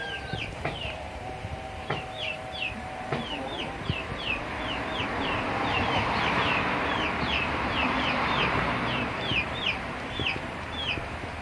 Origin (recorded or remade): remade